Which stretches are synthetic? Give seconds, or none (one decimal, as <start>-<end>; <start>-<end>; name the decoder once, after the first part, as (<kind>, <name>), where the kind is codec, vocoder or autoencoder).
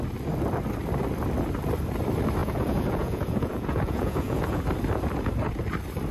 2.4-4.6 (vocoder, Vocos)